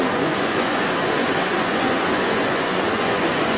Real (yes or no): no